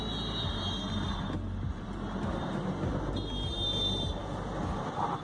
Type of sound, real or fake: real